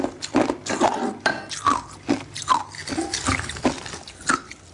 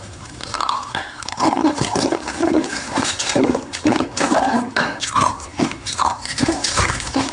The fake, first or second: second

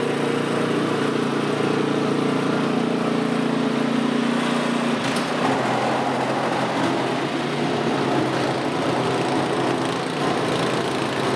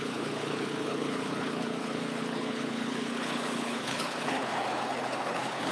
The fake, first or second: second